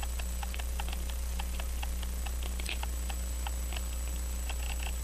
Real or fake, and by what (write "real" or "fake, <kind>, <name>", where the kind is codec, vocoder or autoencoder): real